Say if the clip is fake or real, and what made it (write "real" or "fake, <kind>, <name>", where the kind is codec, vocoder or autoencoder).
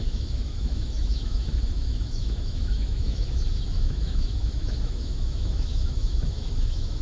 fake, autoencoder, DAC-VAE